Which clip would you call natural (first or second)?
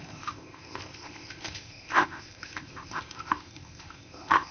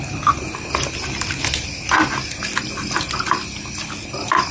second